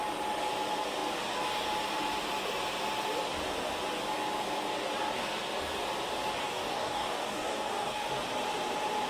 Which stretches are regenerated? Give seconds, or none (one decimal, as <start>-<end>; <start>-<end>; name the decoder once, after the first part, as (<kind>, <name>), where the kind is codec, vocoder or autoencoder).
6.4-8.1 (codec, DAC)